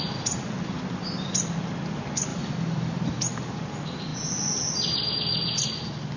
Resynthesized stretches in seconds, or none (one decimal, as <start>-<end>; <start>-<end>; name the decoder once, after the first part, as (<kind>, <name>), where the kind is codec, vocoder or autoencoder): 2.3-3.6 (vocoder, BigVGAN v2)